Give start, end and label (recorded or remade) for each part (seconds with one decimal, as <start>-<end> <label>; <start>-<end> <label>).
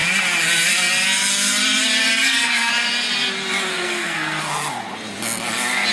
0.0-2.1 recorded; 2.1-2.7 remade; 2.7-3.7 recorded; 3.7-4.4 remade; 4.4-5.9 recorded